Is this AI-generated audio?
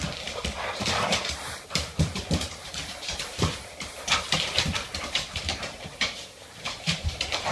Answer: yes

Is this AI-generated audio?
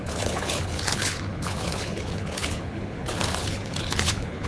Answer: yes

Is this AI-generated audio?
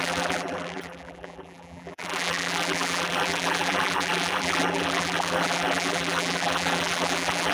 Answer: yes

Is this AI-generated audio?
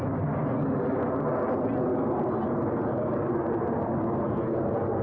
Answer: no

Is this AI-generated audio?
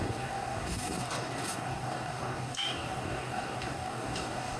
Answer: yes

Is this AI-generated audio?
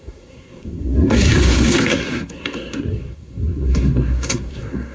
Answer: yes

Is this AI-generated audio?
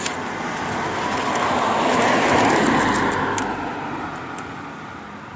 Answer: no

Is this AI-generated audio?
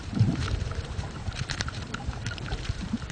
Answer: yes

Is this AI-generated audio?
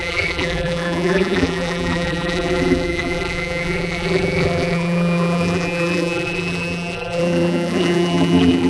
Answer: yes